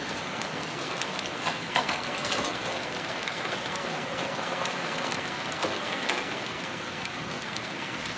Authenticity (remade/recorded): remade